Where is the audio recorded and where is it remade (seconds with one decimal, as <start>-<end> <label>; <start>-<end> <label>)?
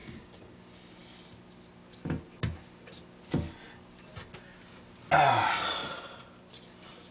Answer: 0.0-0.6 remade; 0.6-7.1 recorded